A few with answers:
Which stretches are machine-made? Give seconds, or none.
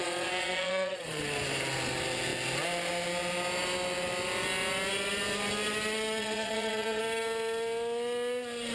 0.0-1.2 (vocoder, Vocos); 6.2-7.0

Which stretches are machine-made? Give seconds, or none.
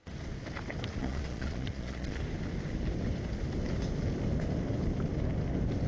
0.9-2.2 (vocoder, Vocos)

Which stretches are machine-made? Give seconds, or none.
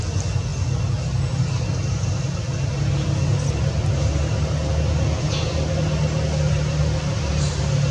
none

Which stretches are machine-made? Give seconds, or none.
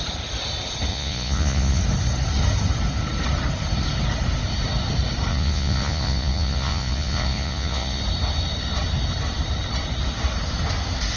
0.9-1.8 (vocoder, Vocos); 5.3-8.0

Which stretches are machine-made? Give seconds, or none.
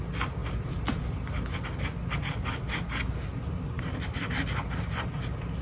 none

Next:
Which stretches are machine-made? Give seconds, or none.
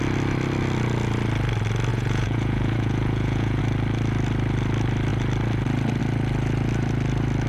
1.9-3.6 (vocoder, Vocos)